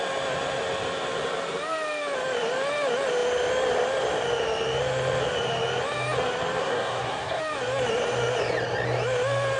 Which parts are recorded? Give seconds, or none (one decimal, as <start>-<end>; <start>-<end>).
0.0-6.6; 7.4-9.6